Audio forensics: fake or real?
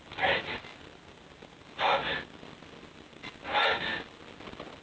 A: real